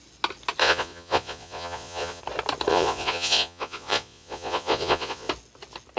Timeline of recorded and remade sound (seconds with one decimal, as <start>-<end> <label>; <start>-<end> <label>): 0.0-0.6 recorded; 0.6-2.2 remade; 2.2-2.7 recorded; 2.7-5.3 remade; 5.3-6.0 recorded

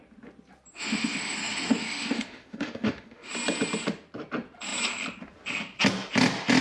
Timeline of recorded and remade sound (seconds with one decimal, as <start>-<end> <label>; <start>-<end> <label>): 0.0-0.7 recorded; 0.7-3.3 remade; 3.3-6.6 recorded

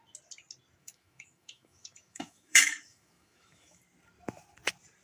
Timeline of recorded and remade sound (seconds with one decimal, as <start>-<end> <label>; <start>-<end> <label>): 0.0-0.8 recorded; 0.8-3.8 remade; 3.8-5.0 recorded

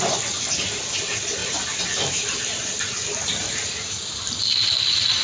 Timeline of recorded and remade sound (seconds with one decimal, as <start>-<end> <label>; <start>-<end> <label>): 0.0-5.2 recorded

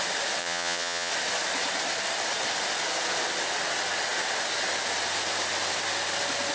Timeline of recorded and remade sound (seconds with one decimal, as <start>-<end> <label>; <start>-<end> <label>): 0.0-0.4 recorded; 0.4-1.1 remade; 1.1-6.5 recorded

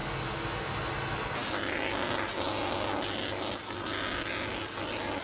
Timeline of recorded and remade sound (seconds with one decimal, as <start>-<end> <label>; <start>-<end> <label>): 0.0-5.2 recorded

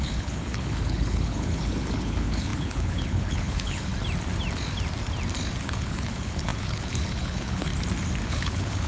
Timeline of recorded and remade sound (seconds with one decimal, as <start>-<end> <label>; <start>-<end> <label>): 0.0-3.9 remade; 3.9-5.6 recorded; 5.6-7.7 remade; 7.7-8.3 recorded; 8.3-8.9 remade